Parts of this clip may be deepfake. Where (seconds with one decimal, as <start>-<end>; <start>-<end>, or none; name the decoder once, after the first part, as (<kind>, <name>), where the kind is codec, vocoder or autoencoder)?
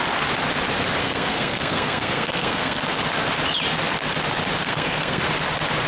1.0-2.8 (codec, SNAC); 4.6-5.2